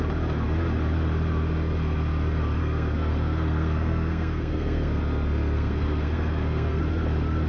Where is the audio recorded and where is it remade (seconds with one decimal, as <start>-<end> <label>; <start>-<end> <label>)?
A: 0.0-2.6 recorded; 2.6-6.8 remade; 6.8-7.5 recorded

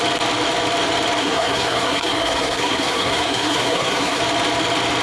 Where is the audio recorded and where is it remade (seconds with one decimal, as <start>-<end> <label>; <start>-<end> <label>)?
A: 0.0-1.2 recorded; 1.2-4.2 remade; 4.2-5.0 recorded